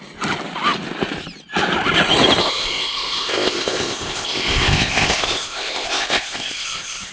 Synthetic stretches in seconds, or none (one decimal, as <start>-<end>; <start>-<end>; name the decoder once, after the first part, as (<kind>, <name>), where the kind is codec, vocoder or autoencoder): 2.4-7.1 (codec, ZipCodec)